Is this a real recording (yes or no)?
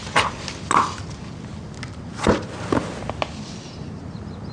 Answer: yes